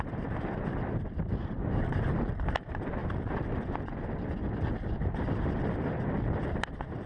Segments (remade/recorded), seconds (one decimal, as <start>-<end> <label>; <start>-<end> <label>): 0.0-3.0 remade; 3.0-4.8 recorded; 4.8-7.1 remade